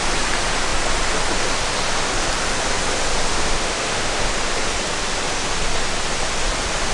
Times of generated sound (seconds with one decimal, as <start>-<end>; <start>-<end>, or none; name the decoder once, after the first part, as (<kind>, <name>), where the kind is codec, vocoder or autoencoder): 3.3-4.3 (autoencoder, DAC-VAE)